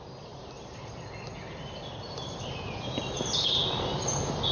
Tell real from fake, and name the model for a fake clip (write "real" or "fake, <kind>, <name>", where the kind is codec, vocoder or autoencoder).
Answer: real